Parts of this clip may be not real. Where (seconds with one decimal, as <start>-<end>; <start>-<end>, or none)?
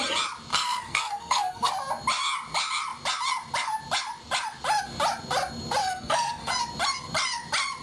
0.5-1.7; 5.8-6.5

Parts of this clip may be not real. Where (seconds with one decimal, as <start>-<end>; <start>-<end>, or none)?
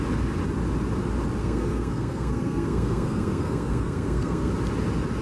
1.4-4.5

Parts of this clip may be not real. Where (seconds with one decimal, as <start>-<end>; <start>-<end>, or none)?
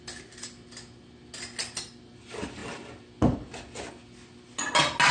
none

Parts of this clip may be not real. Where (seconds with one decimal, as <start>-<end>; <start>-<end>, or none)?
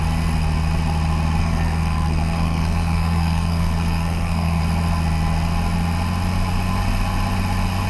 1.4-4.6